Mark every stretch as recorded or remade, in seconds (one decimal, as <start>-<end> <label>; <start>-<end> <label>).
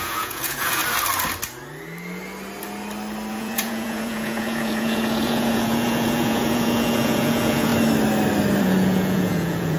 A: 0.0-0.8 remade; 0.8-3.3 recorded; 3.3-7.7 remade; 7.7-8.6 recorded; 8.6-9.8 remade